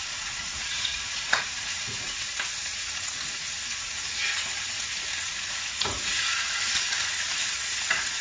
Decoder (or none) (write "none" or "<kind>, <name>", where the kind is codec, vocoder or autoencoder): vocoder, Vocos